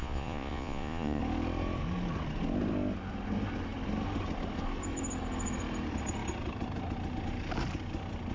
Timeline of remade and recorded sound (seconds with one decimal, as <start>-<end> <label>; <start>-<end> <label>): 0.0-1.2 remade; 1.2-8.3 recorded